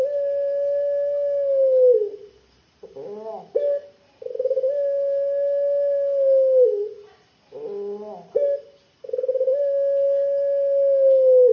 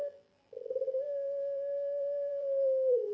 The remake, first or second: second